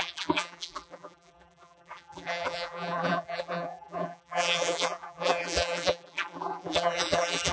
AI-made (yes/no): yes